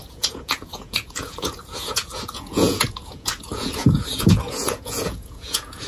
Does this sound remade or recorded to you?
remade